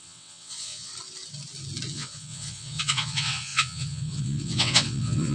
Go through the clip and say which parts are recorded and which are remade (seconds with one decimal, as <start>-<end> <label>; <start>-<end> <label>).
0.0-0.9 remade; 0.9-1.9 recorded; 1.9-5.3 remade